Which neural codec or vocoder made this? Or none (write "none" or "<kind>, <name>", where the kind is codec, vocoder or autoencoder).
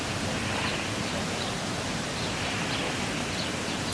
vocoder, BigVGAN v2